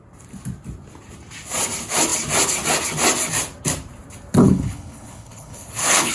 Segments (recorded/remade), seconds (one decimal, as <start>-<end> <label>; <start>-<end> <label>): 0.0-4.4 recorded; 4.4-6.1 remade